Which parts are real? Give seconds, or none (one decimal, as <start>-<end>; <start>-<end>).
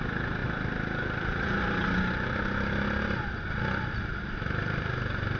0.0-5.4